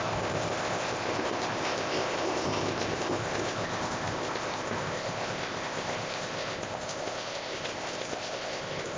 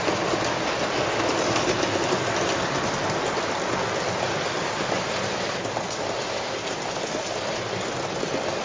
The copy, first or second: first